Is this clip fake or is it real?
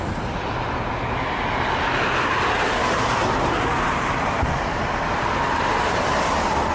real